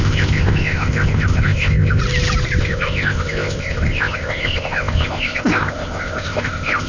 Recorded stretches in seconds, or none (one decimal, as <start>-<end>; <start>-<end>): 2.0-2.6

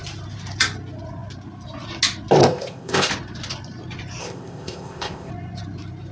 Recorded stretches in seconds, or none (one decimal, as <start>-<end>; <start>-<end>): 0.0-2.4; 3.1-4.2; 5.3-6.1

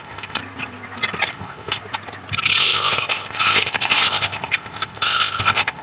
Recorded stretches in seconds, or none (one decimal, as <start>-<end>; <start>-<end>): 0.4-1.3; 1.8-2.6

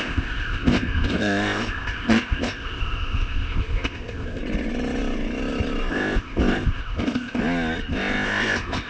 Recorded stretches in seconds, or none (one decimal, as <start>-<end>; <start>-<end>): 4.4-5.9; 7.4-7.9

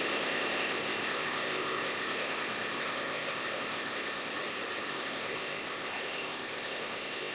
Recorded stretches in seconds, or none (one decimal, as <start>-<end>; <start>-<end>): 4.3-4.9

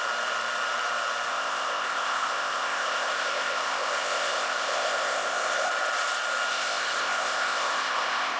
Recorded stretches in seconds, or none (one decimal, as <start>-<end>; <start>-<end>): 0.0-1.3; 5.7-6.5